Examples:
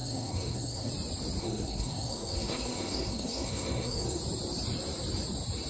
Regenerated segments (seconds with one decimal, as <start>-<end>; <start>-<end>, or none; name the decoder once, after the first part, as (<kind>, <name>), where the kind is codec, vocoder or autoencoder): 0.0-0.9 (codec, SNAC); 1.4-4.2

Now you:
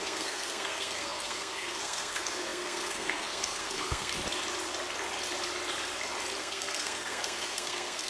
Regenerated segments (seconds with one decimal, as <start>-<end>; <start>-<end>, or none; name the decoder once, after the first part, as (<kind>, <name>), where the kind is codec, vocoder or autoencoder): 0.0-4.1 (codec, SNAC); 6.4-8.1

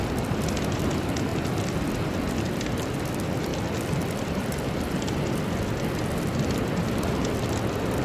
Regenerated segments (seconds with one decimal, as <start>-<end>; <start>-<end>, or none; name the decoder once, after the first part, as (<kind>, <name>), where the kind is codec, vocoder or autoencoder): none

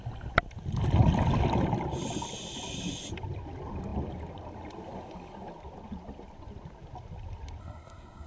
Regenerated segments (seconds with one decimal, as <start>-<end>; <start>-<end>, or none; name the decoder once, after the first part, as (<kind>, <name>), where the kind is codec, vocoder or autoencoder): 7.6-8.3 (codec, SNAC)